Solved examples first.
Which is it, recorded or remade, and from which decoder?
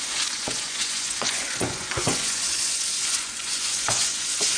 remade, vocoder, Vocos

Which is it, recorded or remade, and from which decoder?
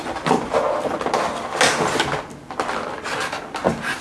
recorded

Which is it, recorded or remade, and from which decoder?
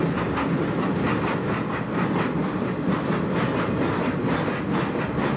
recorded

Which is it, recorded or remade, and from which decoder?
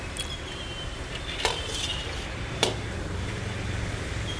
recorded